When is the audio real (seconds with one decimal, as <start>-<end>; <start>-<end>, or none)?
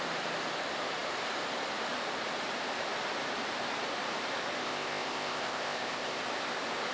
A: 0.0-4.6; 6.2-6.9